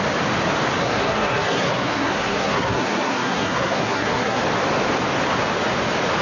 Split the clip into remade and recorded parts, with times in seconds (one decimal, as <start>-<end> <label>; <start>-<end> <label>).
0.0-0.8 recorded; 0.8-4.4 remade; 4.4-6.2 recorded